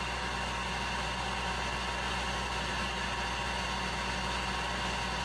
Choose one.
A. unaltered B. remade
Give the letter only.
A